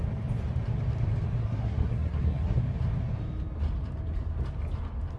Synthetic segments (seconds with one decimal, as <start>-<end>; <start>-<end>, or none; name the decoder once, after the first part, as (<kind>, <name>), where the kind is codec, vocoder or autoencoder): 1.4-2.6 (codec, SNAC)